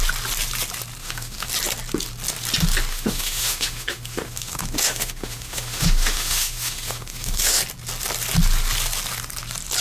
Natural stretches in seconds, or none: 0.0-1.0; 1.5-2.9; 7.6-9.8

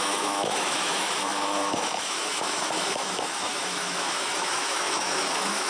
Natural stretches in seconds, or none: none

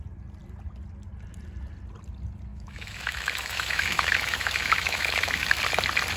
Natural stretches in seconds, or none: 0.0-2.5; 5.6-6.2

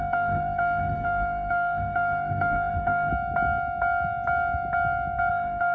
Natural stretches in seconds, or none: 3.1-5.3

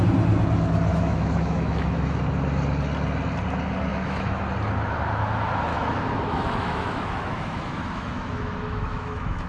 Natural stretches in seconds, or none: 0.0-0.9; 2.2-3.9; 4.4-5.7